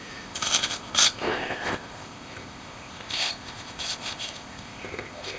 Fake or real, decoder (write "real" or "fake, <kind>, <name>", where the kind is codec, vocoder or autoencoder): fake, codec, ZipCodec